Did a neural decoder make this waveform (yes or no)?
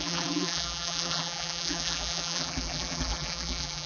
yes